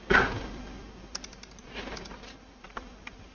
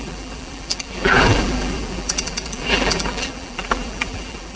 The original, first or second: first